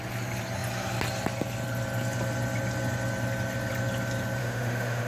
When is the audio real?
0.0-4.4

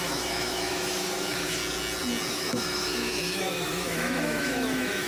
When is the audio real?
1.6-2.3

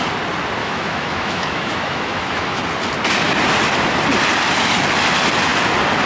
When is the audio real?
0.0-0.6; 2.6-6.1

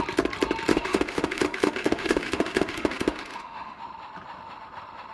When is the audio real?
0.0-0.7; 3.8-5.1

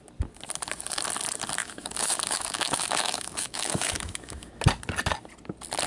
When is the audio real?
0.0-1.6; 4.6-5.9

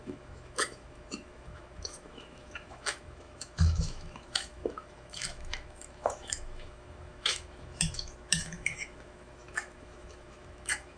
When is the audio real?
none

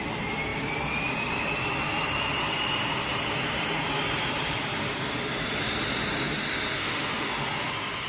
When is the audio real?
0.0-6.8; 7.3-8.1